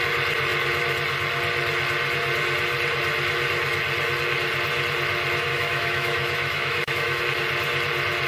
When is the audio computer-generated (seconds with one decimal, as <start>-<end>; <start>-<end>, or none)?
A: 5.5-7.2